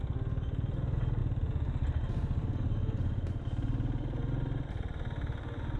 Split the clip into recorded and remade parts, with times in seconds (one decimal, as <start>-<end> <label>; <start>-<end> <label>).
0.0-5.8 recorded